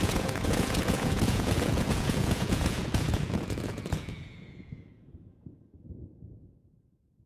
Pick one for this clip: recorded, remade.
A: remade